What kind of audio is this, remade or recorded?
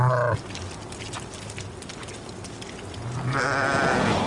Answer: recorded